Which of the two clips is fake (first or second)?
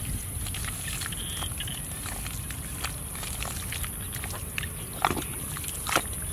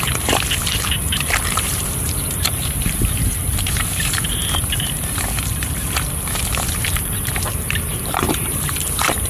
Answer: second